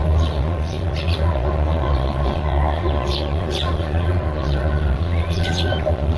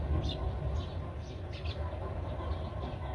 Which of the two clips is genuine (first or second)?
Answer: second